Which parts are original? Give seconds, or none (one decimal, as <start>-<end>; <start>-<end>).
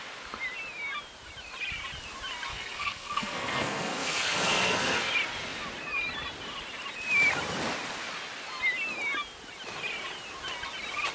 0.0-2.5; 5.1-11.1